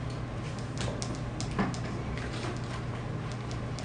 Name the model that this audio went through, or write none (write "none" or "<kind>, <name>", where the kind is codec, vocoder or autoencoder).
none